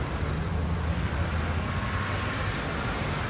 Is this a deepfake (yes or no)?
no